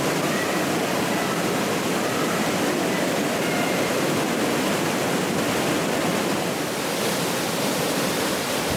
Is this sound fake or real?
real